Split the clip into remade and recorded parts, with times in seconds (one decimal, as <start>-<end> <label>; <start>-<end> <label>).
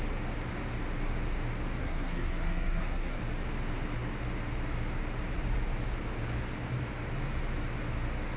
0.0-1.8 recorded; 1.8-3.2 remade; 3.2-8.4 recorded